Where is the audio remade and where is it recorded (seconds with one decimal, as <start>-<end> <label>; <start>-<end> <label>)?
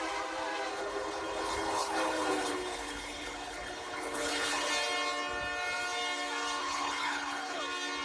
0.0-0.7 recorded; 0.7-4.7 remade; 4.7-6.6 recorded; 6.6-7.6 remade; 7.6-8.0 recorded